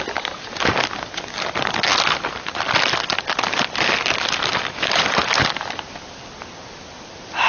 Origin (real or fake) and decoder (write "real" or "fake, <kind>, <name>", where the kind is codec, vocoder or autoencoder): real